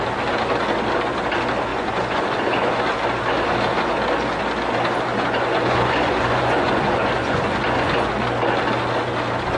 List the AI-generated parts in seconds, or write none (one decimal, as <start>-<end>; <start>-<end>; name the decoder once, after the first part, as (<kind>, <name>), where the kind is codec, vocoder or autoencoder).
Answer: 1.7-2.8 (vocoder, Vocos); 5.1-8.1